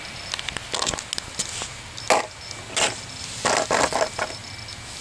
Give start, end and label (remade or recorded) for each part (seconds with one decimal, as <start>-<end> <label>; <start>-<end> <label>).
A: 0.0-5.0 recorded